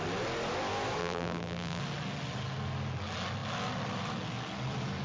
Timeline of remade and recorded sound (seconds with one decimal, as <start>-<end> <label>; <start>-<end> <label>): 0.0-1.0 recorded; 1.0-1.8 remade; 1.8-5.0 recorded